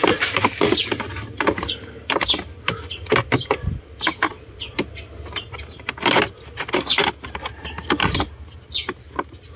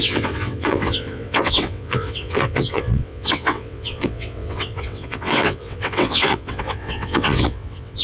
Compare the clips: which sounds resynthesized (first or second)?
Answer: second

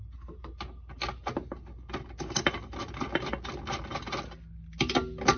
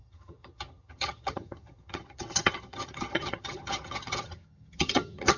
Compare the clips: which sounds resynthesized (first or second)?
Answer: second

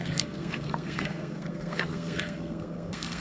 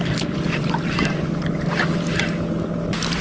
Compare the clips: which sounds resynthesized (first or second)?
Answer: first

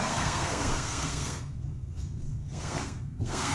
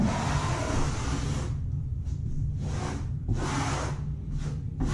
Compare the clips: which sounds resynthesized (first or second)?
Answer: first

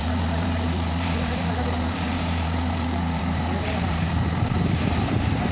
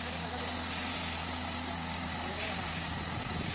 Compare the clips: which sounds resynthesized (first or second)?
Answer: first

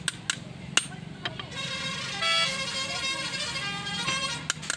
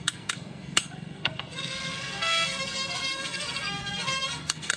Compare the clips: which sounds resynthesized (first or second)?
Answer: second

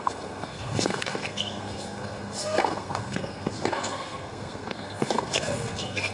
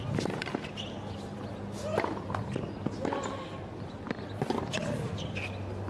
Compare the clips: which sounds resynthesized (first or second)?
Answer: first